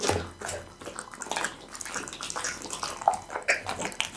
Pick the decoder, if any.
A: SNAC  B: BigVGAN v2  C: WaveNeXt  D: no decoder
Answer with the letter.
D